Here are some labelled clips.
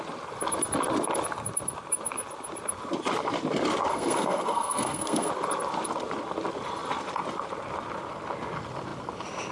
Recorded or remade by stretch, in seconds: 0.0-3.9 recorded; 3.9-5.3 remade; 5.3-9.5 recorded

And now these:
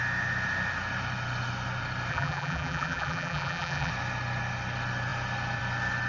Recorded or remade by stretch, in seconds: 0.0-2.1 recorded; 2.1-3.9 remade; 3.9-6.1 recorded

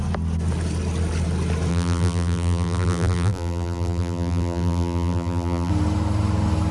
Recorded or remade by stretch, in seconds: 0.0-1.7 recorded; 1.7-5.7 remade; 5.7-6.7 recorded

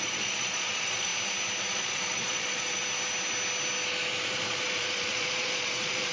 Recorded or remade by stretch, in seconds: 0.0-1.1 remade; 1.1-1.6 recorded; 1.6-2.8 remade; 2.8-4.2 recorded; 4.2-6.1 remade

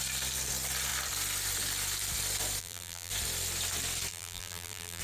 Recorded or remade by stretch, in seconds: 0.0-2.6 recorded; 2.6-3.1 remade; 3.1-4.1 recorded; 4.1-5.0 remade

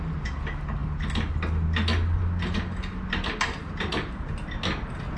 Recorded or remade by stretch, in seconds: 0.0-5.2 recorded